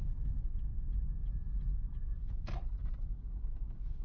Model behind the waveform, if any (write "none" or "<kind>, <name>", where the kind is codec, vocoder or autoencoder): none